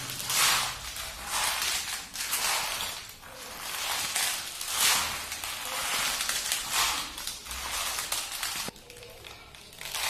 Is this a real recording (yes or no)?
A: yes